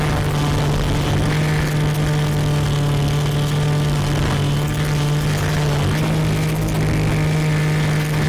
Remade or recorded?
recorded